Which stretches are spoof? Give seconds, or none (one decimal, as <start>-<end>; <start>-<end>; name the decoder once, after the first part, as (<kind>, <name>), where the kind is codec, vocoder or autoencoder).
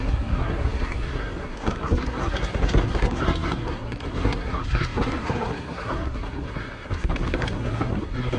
0.0-8.4 (codec, SNAC)